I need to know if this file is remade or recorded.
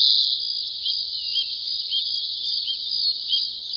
recorded